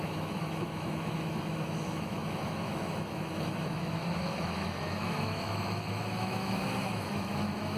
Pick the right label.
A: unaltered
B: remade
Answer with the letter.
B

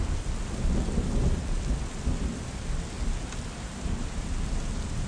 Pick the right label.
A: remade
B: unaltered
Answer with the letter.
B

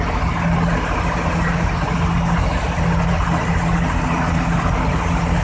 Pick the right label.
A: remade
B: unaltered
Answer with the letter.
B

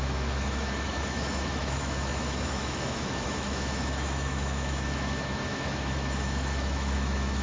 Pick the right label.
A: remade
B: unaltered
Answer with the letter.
A